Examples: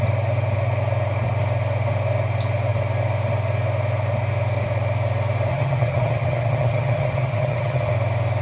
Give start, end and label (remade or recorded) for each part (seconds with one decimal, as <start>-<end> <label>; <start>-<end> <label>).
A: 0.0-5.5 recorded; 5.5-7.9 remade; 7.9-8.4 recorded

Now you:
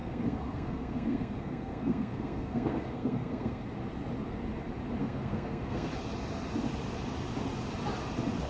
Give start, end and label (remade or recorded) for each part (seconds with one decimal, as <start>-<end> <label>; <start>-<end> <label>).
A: 0.0-3.6 remade; 3.6-5.0 recorded; 5.0-5.9 remade; 5.9-8.5 recorded

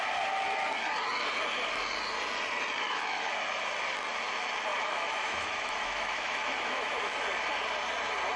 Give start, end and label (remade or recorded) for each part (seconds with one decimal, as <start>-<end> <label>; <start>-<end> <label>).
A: 0.0-2.8 recorded; 2.8-3.3 remade; 3.3-4.7 recorded; 4.7-7.2 remade; 7.2-8.4 recorded

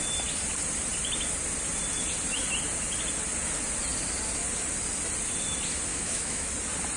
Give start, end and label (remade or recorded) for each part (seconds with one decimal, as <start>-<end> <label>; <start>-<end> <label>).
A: 0.0-5.9 recorded; 5.9-6.5 remade; 6.5-7.0 recorded

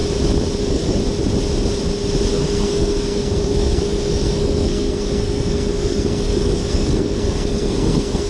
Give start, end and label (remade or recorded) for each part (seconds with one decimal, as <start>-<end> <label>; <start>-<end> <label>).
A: 0.0-0.6 recorded; 0.6-1.0 remade; 1.0-2.3 recorded; 2.3-8.3 remade

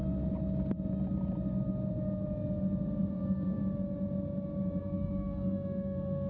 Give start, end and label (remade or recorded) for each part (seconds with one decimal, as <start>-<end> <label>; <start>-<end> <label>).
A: 0.0-3.1 recorded; 3.1-3.6 remade; 3.6-4.8 recorded; 4.8-6.3 remade

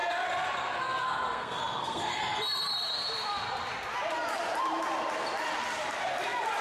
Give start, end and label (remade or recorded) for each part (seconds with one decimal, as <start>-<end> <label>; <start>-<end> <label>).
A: 0.0-0.8 recorded; 0.8-2.2 remade; 2.2-6.6 recorded

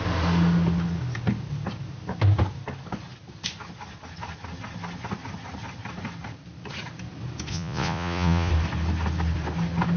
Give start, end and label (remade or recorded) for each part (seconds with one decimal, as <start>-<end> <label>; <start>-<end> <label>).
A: 0.0-7.5 recorded; 7.5-8.5 remade; 8.5-10.0 recorded